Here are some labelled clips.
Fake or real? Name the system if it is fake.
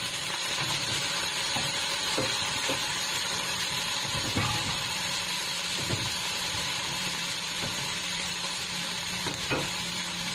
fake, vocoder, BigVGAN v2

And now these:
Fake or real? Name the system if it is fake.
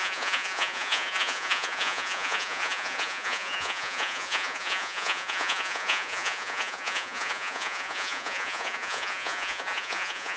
fake, vocoder, Vocos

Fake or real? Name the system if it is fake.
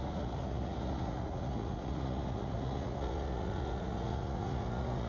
fake, vocoder, Vocos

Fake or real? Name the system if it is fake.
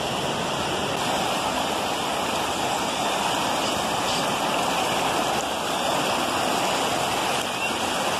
real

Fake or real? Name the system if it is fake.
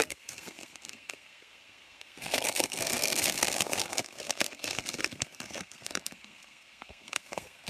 fake, codec, SNAC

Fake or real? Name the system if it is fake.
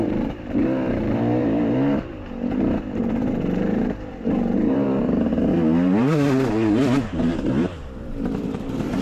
fake, vocoder, BigVGAN v2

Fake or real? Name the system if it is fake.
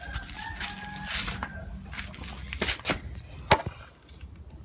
real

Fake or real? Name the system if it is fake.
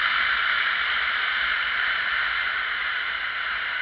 real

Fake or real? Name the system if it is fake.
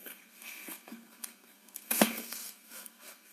fake, codec, SNAC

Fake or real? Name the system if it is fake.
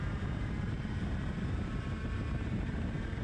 fake, vocoder, BigVGAN v2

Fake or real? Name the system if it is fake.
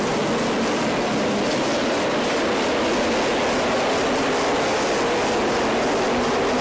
real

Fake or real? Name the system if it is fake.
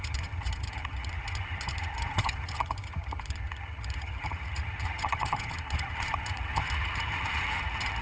fake, vocoder, HiFi-GAN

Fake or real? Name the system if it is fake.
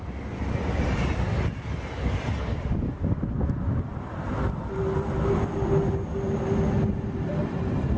real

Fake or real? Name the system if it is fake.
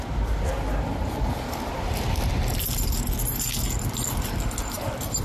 real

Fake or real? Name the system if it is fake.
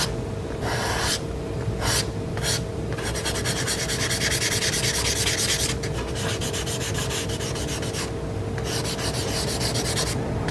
real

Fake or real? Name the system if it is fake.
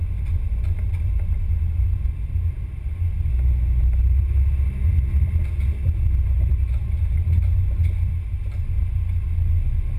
real